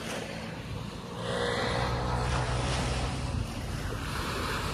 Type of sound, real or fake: fake